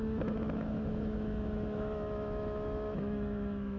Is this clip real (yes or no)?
no